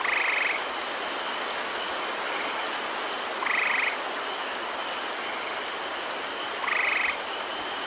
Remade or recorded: recorded